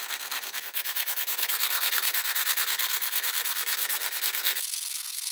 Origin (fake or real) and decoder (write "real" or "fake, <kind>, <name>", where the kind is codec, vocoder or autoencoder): fake, codec, SNAC